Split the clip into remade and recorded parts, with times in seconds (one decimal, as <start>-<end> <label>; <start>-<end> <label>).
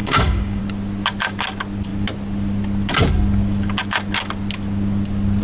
0.0-0.6 remade; 0.6-5.4 recorded